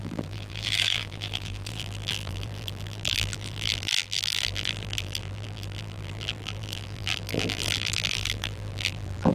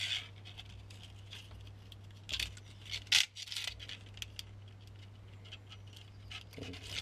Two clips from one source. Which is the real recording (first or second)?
second